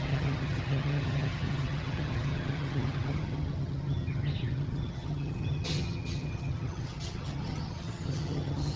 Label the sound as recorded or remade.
remade